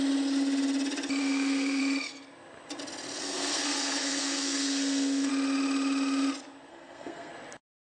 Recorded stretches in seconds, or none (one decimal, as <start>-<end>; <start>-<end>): 0.0-1.2; 1.8-3.2; 5.3-6.7; 7.3-8.0